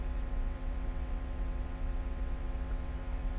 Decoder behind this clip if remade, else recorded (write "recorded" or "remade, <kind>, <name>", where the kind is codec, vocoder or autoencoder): remade, vocoder, WaveNeXt